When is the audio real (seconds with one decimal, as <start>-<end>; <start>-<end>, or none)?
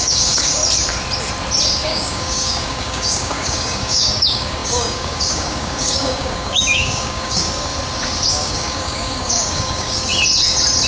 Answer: 0.6-1.8; 7.7-8.3; 10.1-10.9